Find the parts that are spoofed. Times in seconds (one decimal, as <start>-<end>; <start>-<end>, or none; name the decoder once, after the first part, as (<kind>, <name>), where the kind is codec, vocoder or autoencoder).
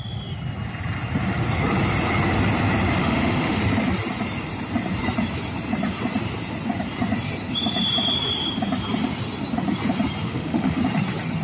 3.0-3.6 (autoencoder, DAC-VAE); 10.2-10.8